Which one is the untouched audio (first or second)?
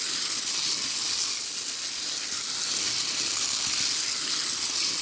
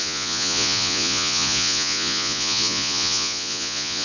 first